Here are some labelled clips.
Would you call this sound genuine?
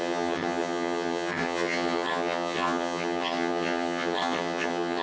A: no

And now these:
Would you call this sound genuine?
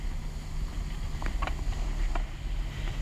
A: yes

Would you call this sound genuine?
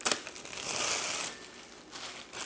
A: yes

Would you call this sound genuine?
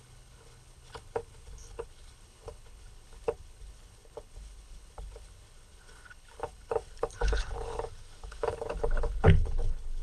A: no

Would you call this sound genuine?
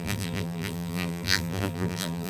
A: no